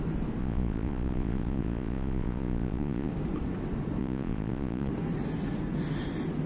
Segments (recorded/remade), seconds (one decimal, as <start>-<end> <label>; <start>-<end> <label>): 0.0-0.4 recorded; 0.4-3.1 remade; 3.1-4.0 recorded; 4.0-4.9 remade; 4.9-6.5 recorded